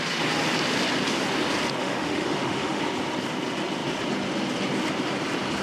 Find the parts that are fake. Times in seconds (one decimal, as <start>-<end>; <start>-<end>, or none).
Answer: 1.8-2.8